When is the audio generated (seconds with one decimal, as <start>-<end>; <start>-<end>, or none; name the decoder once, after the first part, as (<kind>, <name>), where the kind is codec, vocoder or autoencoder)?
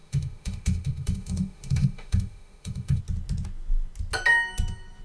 0.0-3.0 (autoencoder, DAC-VAE)